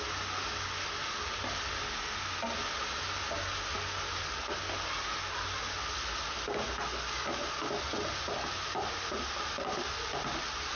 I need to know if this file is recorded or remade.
recorded